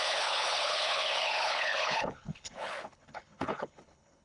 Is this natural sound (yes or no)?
no